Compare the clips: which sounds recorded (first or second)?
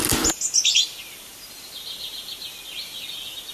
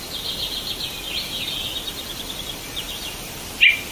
first